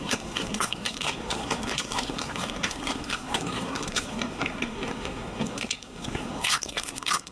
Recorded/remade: remade